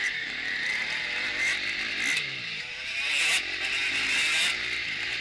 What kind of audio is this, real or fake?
real